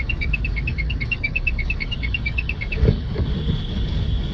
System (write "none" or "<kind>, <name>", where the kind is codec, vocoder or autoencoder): codec, DAC